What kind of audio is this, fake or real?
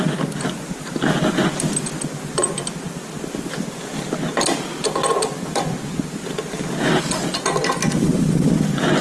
real